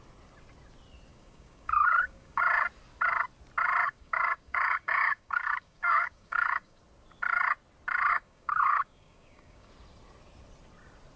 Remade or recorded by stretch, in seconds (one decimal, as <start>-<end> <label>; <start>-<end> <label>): 0.0-1.1 recorded; 1.1-2.4 remade; 2.4-3.8 recorded; 3.8-6.8 remade; 6.8-8.1 recorded; 8.1-9.7 remade; 9.7-11.2 recorded